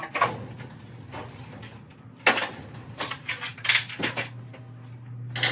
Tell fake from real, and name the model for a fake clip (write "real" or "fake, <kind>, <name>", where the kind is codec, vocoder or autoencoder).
real